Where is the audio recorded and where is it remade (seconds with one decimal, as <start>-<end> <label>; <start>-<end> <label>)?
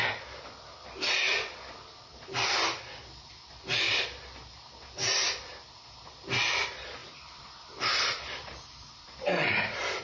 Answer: 0.0-7.0 recorded; 7.0-10.0 remade